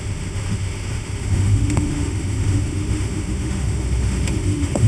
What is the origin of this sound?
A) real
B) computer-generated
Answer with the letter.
B